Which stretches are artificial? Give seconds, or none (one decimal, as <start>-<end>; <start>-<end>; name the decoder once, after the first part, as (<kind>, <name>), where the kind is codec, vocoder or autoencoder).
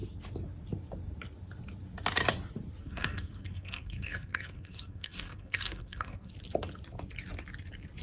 2.8-6.3 (codec, SNAC)